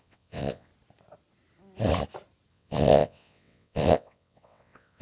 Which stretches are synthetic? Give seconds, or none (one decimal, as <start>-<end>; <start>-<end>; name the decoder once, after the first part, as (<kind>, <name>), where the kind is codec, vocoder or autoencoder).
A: 0.0-0.7 (vocoder, WaveNeXt); 2.5-5.0